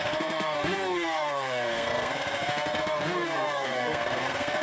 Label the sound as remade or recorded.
remade